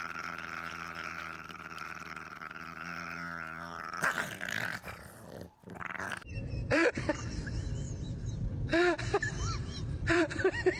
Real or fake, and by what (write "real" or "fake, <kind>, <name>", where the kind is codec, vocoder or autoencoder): fake, vocoder, BigVGAN v2